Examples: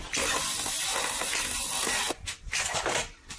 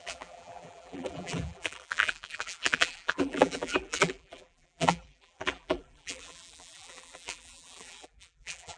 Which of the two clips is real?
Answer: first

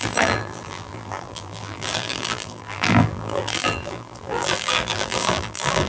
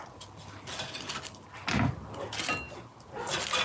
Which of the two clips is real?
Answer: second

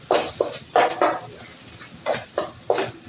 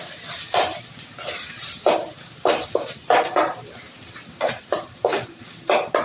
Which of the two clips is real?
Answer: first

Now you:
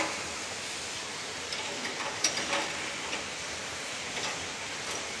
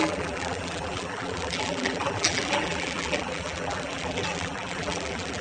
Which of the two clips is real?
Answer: first